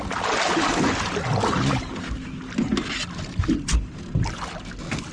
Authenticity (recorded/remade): recorded